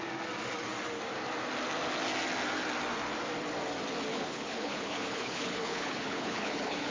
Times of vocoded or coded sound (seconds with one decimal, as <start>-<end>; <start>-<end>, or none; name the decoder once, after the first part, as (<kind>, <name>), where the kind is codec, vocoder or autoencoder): 4.1-6.9 (codec, HILCodec)